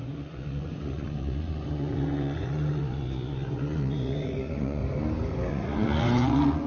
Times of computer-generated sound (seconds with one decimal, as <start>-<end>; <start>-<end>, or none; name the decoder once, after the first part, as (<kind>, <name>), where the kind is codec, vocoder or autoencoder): 0.0-4.8 (vocoder, Vocos); 5.5-6.7